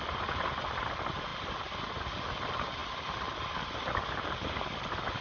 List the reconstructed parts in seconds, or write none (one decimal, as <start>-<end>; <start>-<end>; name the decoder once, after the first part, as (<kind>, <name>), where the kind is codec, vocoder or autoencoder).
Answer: none